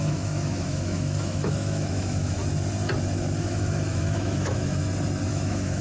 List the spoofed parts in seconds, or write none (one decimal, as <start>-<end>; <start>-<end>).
0.0-2.4; 3.4-4.8; 5.3-5.8